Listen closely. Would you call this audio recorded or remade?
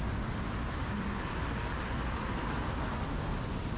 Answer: recorded